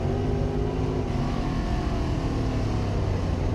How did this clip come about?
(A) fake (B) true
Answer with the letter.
B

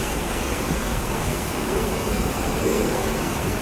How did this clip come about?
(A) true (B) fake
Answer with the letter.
B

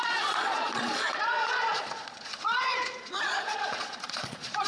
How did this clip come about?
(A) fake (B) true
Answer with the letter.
A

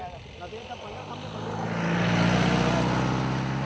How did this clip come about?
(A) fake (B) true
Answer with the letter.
B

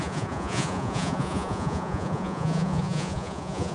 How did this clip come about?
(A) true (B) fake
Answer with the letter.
B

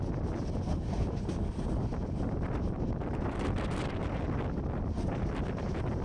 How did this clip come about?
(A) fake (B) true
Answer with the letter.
B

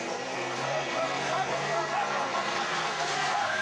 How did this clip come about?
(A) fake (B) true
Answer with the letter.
A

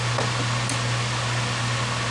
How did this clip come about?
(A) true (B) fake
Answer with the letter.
A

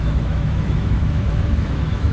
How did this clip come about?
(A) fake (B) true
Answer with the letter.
A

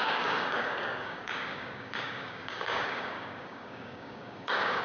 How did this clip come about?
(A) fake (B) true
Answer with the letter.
A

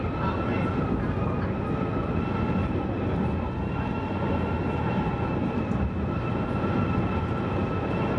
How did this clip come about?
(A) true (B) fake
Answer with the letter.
A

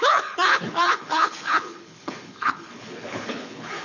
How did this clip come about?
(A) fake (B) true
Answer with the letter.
A